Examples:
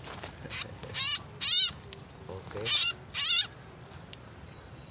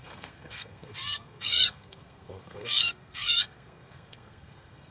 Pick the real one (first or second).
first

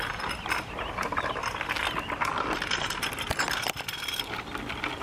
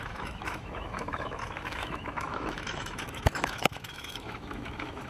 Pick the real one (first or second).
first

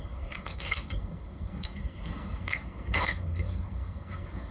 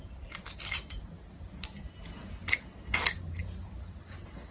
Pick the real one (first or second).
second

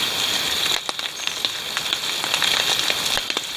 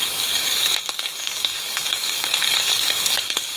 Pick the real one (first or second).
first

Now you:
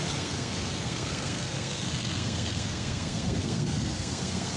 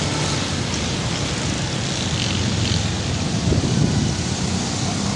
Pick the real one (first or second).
second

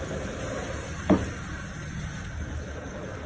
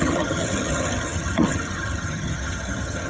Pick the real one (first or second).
first